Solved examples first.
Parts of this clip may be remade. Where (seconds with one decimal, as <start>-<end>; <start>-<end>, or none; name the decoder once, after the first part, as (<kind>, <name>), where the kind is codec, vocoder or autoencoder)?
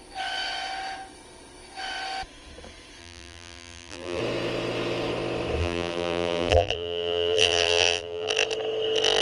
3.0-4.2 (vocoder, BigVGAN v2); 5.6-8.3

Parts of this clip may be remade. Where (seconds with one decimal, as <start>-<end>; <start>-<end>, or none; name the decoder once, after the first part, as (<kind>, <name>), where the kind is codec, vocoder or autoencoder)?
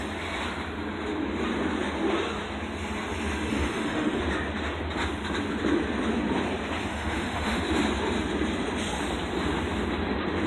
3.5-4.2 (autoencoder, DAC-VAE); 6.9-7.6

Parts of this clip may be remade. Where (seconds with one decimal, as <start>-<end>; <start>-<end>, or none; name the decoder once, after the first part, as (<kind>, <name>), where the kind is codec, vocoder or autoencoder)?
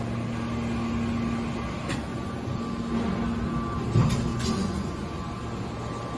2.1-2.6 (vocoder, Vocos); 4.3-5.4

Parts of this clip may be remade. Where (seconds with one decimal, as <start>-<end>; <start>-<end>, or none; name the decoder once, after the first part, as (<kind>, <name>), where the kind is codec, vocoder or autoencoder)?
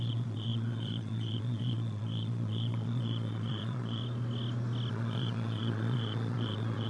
0.0-4.0 (vocoder, Vocos); 4.9-6.9